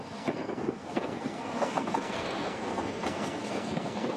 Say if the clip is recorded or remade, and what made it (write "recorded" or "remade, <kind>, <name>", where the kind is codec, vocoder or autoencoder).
remade, codec, SNAC